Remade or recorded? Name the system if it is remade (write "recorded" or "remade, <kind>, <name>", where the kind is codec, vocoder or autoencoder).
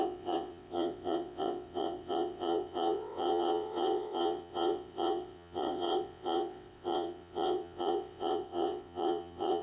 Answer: remade, vocoder, WaveNeXt